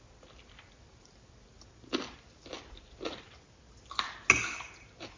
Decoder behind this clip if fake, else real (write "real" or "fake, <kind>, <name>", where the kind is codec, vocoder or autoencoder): real